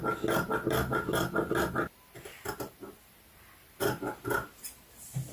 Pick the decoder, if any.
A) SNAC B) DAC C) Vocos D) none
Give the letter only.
D